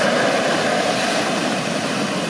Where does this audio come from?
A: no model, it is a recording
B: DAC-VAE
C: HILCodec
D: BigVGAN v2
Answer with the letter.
A